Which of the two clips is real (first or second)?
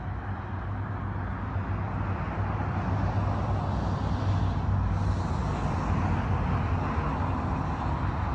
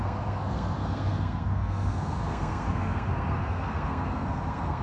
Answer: first